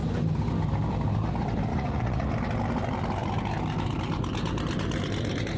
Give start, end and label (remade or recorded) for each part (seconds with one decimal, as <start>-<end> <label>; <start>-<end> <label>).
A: 0.0-1.7 recorded; 1.7-2.3 remade; 2.3-5.6 recorded